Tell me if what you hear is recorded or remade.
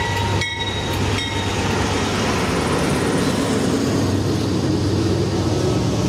recorded